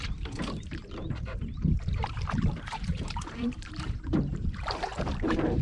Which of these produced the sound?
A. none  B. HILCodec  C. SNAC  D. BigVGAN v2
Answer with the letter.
D